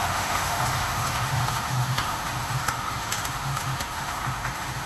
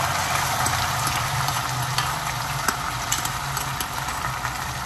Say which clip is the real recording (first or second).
second